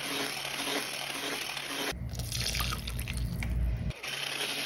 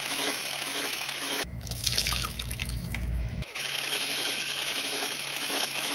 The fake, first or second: second